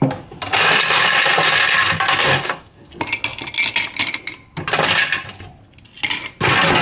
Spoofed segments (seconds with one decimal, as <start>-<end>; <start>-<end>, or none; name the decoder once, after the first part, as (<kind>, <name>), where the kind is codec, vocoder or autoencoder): 2.2-2.9 (codec, DAC)